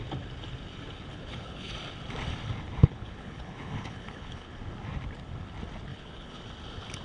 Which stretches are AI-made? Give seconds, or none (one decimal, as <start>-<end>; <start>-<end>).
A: 1.1-1.7; 2.8-4.5; 5.9-6.4